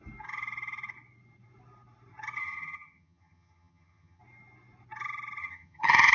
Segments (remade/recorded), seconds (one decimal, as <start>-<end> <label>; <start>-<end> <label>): 0.0-2.4 recorded; 2.4-4.2 remade; 4.2-5.4 recorded; 5.4-6.1 remade